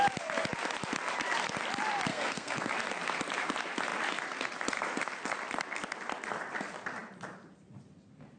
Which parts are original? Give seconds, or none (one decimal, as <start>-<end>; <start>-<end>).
0.0-2.1; 2.7-8.4